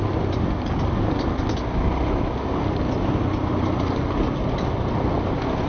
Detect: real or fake real